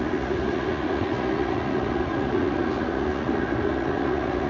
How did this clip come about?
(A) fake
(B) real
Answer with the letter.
A